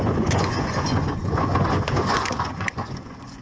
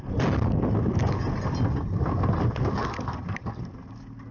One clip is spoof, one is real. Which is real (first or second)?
second